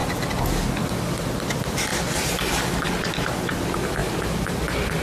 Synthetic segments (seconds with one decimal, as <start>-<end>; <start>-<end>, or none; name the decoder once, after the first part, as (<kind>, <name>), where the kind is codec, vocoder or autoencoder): none